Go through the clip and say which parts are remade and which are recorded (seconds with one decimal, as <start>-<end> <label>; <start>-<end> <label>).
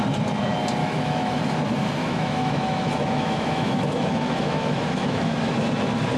0.0-0.8 recorded; 0.8-1.4 remade; 1.4-2.0 recorded; 2.0-5.7 remade; 5.7-6.2 recorded